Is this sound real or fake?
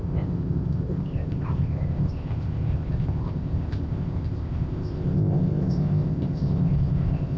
fake